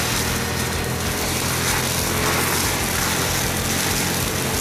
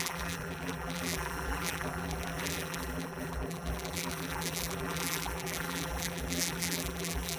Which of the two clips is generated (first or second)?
second